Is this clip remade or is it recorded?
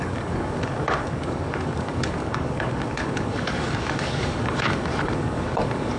remade